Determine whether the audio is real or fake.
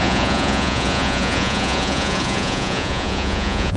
fake